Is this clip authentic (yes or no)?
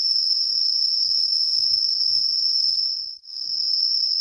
no